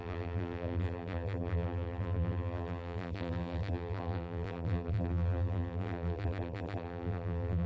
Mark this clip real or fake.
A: fake